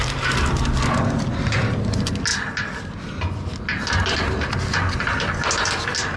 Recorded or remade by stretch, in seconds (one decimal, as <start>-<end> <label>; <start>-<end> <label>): 0.0-6.2 recorded